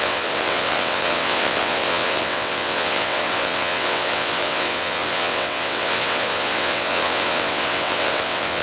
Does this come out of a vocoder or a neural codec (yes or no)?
yes